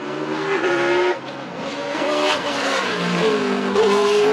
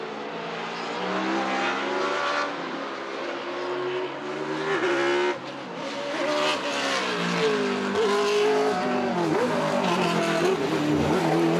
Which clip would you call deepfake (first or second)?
first